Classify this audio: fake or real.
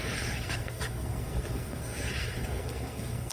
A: fake